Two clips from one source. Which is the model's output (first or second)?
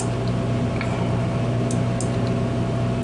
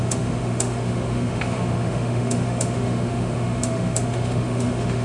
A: second